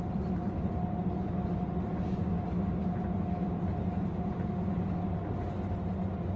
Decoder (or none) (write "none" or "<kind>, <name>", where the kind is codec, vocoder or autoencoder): none